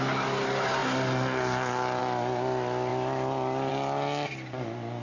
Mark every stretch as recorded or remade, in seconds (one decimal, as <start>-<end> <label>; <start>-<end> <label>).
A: 0.0-5.0 recorded